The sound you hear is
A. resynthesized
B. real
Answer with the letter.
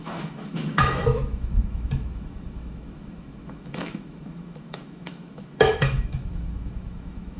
A